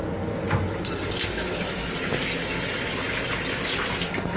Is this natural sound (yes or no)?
yes